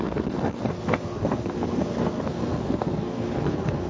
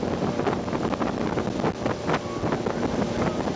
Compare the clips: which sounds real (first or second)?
second